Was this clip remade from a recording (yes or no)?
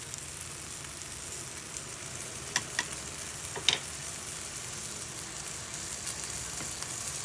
no